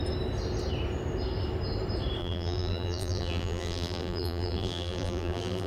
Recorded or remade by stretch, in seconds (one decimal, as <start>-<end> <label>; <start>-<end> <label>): 0.0-2.2 recorded; 2.2-5.7 remade